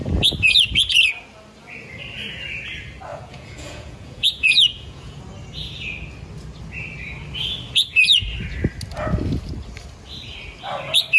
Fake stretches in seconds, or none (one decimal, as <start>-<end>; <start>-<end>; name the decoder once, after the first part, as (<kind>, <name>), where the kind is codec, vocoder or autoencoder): 3.1-5.2 (vocoder, Vocos)